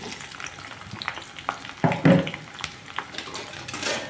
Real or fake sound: real